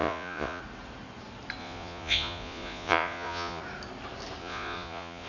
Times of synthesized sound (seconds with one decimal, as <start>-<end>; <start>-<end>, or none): 0.0-0.6; 1.6-3.6; 4.4-5.3